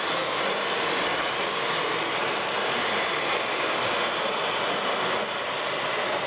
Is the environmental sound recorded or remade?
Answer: recorded